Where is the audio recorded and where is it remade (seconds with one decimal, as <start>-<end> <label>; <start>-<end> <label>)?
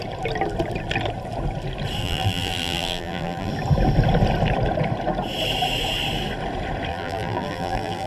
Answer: 0.0-2.0 recorded; 2.0-3.5 remade; 3.5-6.9 recorded; 6.9-8.1 remade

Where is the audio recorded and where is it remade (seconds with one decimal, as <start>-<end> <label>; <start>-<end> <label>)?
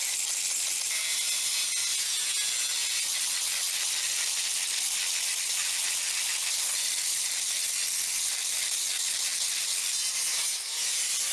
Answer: 0.0-11.3 recorded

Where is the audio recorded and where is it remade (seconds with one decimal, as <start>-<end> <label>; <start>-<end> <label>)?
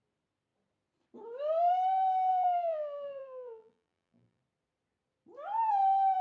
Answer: 0.0-2.3 recorded; 2.3-4.4 remade; 4.4-6.2 recorded